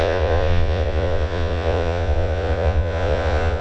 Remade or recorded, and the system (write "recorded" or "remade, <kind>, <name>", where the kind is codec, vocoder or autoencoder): remade, vocoder, Vocos